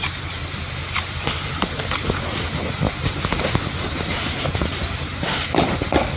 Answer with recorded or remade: recorded